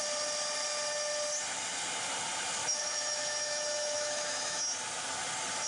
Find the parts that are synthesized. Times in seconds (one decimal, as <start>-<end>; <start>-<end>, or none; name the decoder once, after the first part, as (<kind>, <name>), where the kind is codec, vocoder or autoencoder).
2.6-4.6 (autoencoder, DAC-VAE)